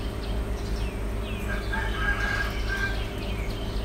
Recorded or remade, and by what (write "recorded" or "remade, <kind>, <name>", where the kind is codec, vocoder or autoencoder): recorded